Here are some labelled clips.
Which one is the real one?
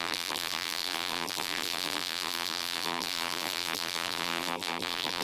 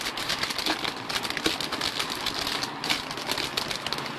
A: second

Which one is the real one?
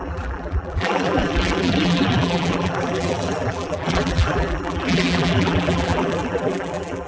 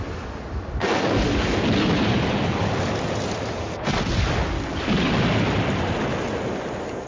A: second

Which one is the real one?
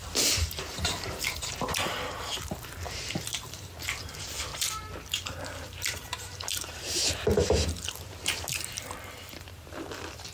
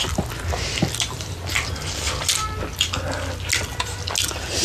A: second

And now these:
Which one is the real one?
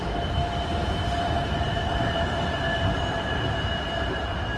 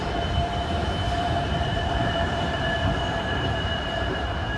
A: first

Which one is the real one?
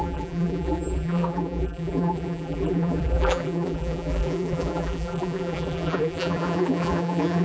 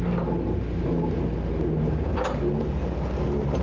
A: second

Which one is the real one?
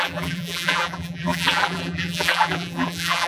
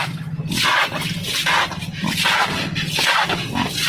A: second